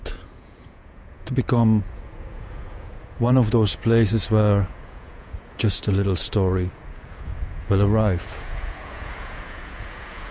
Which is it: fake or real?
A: fake